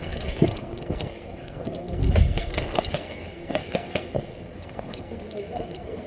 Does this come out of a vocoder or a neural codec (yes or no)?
yes